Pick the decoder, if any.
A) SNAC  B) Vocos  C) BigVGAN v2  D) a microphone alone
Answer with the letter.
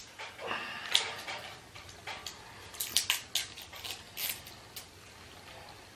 D